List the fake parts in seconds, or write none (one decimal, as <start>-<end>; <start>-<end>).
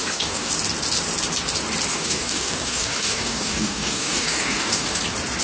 0.0-0.5; 1.9-5.0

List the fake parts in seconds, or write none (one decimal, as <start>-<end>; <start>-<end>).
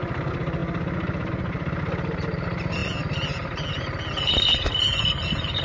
none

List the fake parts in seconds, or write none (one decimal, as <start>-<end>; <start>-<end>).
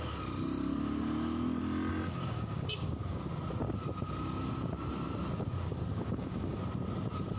1.9-3.2; 5.9-6.6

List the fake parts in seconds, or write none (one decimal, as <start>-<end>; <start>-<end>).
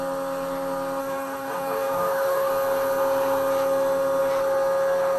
1.0-2.5